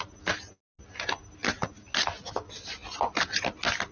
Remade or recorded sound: recorded